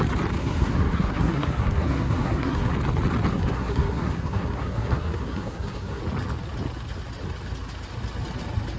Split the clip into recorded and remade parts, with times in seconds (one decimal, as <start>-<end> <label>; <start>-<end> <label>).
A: 0.0-0.4 recorded; 0.4-2.7 remade; 2.7-3.3 recorded; 3.3-6.0 remade; 6.0-8.8 recorded